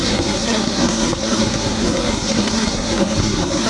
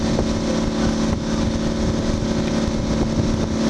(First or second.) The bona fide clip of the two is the second